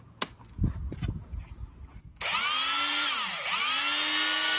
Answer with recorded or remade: recorded